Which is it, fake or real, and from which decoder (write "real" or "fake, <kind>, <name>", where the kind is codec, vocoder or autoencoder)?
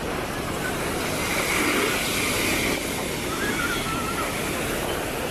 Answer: real